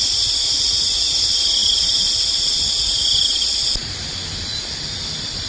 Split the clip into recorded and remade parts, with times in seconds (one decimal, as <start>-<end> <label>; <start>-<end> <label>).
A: 0.0-5.5 recorded